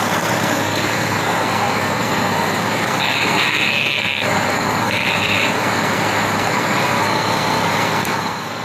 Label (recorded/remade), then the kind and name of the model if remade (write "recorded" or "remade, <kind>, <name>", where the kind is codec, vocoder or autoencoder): remade, codec, SNAC